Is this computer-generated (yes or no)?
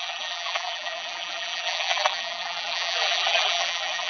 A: yes